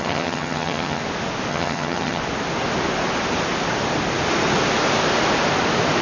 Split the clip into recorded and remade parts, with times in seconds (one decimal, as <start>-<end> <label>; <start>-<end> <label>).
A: 0.0-1.0 remade; 1.0-1.5 recorded; 1.5-2.2 remade; 2.2-6.0 recorded